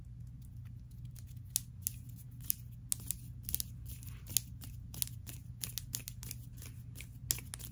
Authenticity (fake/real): real